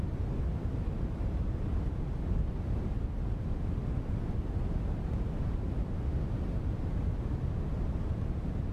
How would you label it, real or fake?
real